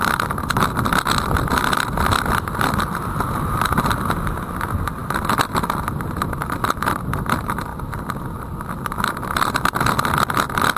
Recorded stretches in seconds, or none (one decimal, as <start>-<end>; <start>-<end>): 0.0-10.8